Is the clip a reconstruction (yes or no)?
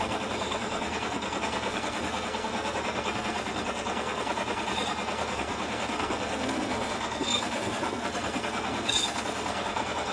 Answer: yes